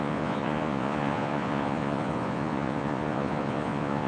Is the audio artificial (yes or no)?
yes